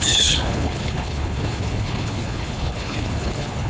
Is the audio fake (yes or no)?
yes